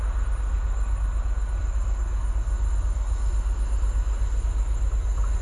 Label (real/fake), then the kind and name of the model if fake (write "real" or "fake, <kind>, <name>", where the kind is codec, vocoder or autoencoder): real